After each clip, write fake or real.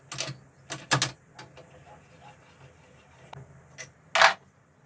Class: real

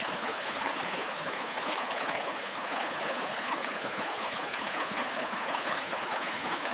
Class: fake